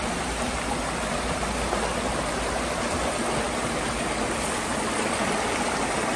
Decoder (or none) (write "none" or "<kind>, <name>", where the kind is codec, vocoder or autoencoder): none